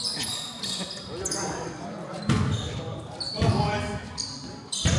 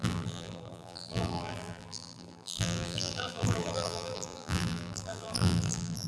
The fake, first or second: second